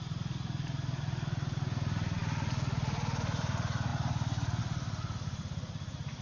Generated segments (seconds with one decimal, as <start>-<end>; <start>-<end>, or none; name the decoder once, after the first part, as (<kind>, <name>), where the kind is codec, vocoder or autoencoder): 0.0-2.2 (vocoder, BigVGAN v2); 3.4-3.9; 4.6-6.2